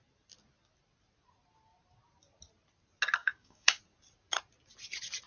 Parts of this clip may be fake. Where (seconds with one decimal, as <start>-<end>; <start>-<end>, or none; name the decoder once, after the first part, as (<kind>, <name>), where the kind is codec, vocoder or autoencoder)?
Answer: 3.2-3.8 (codec, DAC)